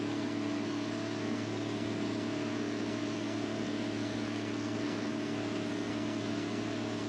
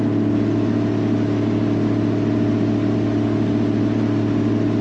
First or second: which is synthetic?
first